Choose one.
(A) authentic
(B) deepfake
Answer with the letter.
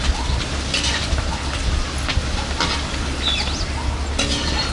A